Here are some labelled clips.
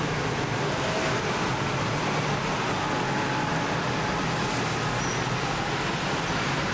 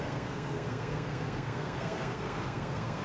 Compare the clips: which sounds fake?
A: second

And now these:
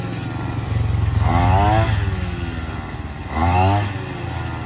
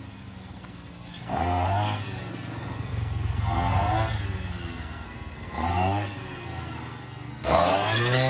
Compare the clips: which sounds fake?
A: second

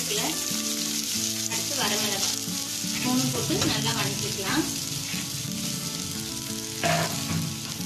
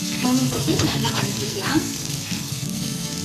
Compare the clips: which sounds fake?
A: second